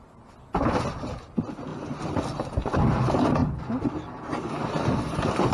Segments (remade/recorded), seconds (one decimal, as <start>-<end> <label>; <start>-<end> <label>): 0.0-5.5 recorded